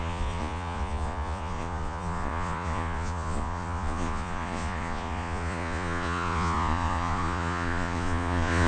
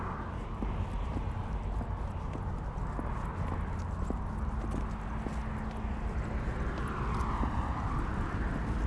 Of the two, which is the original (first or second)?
second